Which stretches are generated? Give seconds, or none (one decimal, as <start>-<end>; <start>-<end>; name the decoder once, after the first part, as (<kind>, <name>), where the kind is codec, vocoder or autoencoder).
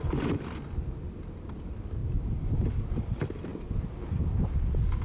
none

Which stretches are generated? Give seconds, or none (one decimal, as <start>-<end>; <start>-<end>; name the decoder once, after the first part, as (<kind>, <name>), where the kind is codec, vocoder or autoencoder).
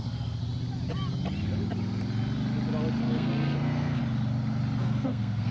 0.0-0.4 (codec, SNAC); 3.0-4.0; 4.8-5.5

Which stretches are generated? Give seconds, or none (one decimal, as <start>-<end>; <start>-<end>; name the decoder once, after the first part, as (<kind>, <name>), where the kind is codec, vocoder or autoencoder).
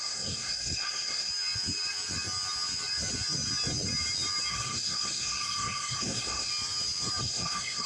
0.0-1.3 (codec, SNAC); 4.5-6.5; 7.2-7.9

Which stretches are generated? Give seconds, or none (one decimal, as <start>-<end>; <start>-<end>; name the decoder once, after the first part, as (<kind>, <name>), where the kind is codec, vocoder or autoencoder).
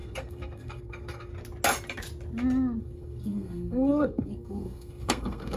0.0-1.3 (codec, SNAC); 2.8-5.6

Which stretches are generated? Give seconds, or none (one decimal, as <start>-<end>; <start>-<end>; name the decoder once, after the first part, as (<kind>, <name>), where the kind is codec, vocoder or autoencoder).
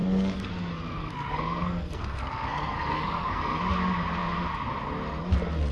0.0-0.5 (codec, SNAC); 1.0-3.6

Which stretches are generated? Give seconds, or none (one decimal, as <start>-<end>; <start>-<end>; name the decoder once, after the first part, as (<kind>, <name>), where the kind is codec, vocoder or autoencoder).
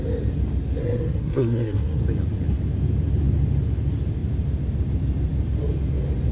0.8-2.0 (codec, SNAC)